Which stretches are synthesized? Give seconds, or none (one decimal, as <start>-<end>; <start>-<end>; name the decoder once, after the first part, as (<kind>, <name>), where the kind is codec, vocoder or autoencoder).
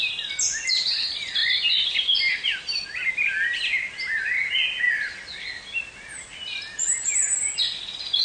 none